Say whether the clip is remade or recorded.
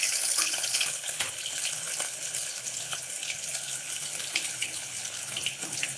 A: remade